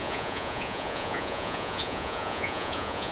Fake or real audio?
fake